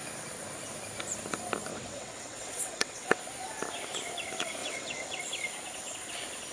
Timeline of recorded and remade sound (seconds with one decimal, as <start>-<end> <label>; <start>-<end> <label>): 0.0-1.7 recorded; 1.7-3.2 remade; 3.2-4.6 recorded; 4.6-5.2 remade; 5.2-6.5 recorded